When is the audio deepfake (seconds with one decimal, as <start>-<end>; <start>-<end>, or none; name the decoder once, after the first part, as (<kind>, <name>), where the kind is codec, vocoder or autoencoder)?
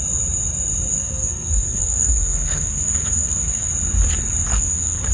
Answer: 1.0-3.7 (codec, SNAC); 4.5-5.1